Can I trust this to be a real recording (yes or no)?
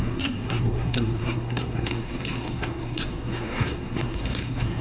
no